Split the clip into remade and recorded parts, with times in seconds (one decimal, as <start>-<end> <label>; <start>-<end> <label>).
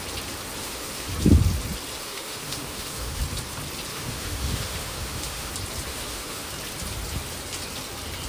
0.0-0.6 recorded; 0.6-1.1 remade; 1.1-2.0 recorded; 2.0-3.2 remade; 3.2-3.9 recorded; 3.9-5.5 remade; 5.5-5.9 recorded; 5.9-6.5 remade; 6.5-8.3 recorded